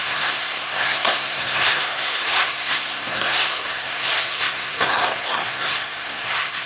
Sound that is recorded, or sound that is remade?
remade